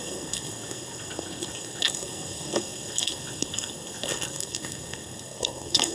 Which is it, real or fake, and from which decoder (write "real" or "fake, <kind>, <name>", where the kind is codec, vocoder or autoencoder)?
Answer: fake, codec, SNAC